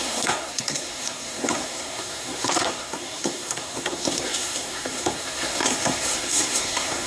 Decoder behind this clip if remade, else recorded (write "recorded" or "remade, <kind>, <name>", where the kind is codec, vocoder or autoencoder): remade, codec, SNAC